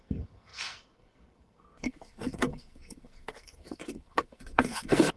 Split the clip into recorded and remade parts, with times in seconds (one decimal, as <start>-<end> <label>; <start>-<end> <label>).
0.0-5.2 remade